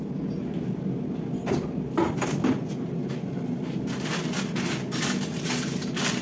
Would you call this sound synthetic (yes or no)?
no